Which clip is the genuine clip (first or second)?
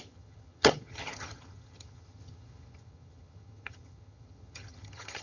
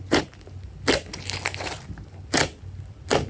second